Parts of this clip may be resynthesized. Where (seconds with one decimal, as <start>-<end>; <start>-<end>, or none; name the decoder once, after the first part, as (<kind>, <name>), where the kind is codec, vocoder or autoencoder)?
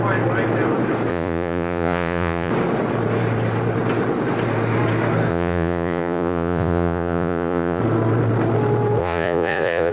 1.1-2.5 (vocoder, Vocos); 5.3-7.8; 9.0-9.9